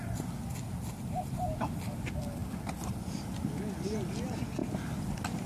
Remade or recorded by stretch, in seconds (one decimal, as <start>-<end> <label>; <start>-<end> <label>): 0.0-5.5 recorded